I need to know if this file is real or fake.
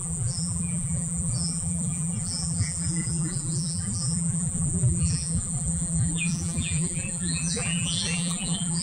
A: fake